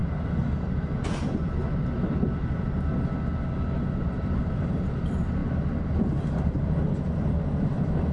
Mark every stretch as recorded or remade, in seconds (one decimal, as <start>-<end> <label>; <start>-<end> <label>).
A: 0.0-4.2 recorded; 4.2-8.1 remade

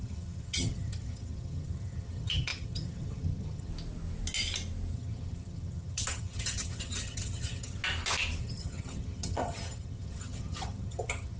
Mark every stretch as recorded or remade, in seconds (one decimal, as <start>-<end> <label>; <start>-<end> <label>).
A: 0.0-3.7 remade; 3.7-4.9 recorded; 4.9-7.8 remade; 7.8-8.4 recorded; 8.4-11.4 remade

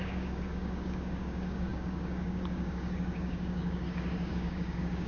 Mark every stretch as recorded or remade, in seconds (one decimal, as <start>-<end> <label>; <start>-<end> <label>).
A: 0.0-5.1 remade